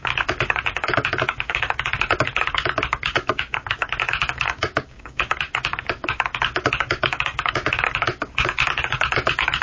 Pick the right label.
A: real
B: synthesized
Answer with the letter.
B